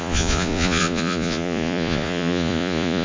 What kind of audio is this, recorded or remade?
remade